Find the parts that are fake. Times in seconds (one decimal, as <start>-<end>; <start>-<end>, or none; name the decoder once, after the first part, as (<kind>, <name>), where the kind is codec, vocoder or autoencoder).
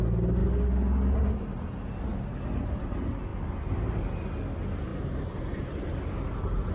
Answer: 4.9-6.7 (vocoder, BigVGAN v2)